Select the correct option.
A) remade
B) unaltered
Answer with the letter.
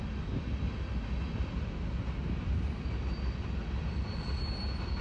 B